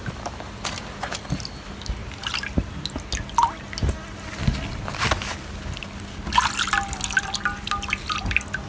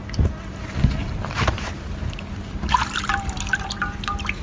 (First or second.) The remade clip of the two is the second